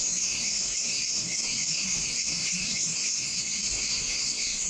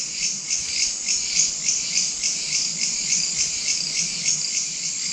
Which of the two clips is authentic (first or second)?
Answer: second